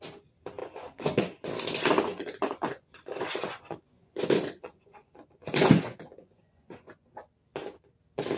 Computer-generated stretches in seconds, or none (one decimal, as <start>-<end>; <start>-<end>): 0.6-1.5; 2.1-7.1